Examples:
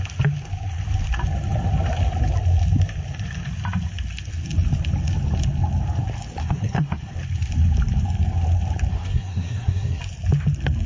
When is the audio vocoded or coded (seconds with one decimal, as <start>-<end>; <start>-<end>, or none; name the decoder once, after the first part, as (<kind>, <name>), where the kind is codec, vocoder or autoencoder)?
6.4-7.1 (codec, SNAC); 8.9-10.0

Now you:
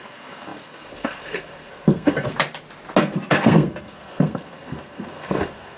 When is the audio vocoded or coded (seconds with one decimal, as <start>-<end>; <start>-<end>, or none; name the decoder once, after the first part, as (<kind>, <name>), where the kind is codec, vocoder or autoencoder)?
0.0-2.3 (codec, SNAC); 3.0-5.8

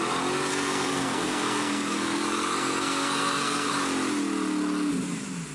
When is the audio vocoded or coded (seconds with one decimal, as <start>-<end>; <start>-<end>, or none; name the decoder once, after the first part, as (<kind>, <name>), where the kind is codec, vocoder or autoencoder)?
0.5-3.7 (codec, SNAC)